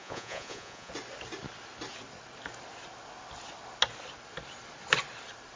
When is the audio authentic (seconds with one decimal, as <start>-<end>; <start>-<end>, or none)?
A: 0.9-5.6